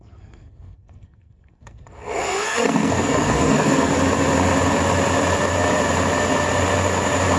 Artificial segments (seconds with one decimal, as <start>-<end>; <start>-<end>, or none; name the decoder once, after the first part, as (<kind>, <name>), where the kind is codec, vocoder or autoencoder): 0.0-3.9 (codec, SNAC)